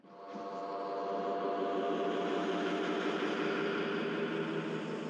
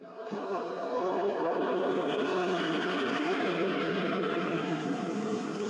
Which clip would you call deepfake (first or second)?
second